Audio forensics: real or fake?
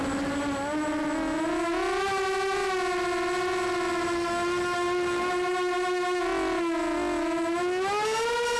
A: real